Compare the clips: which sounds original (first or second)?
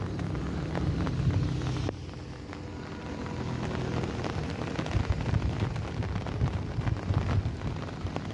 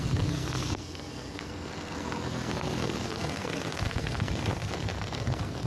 first